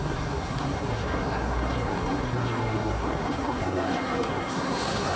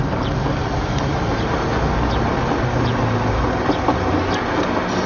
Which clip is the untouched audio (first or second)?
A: second